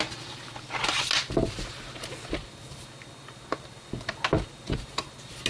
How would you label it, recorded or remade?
recorded